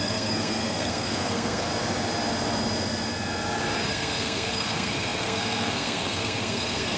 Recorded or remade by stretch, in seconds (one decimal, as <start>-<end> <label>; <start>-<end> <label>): 0.0-1.7 remade; 1.7-3.9 recorded; 3.9-7.0 remade